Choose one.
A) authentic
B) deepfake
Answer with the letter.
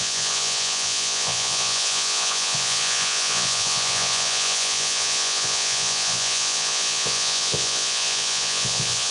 B